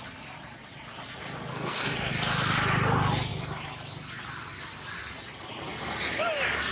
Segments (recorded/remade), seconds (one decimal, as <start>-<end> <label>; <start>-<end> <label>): 0.0-1.5 recorded; 1.5-2.1 remade; 2.1-6.7 recorded